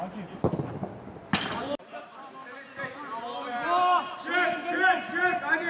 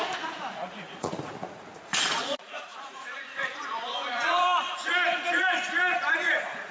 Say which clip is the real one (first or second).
first